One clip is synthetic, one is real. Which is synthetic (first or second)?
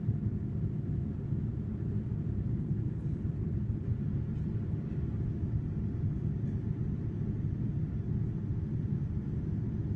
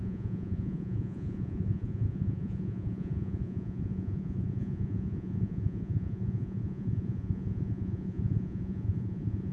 second